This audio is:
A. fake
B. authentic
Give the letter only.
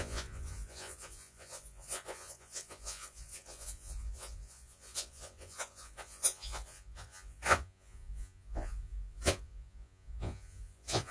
A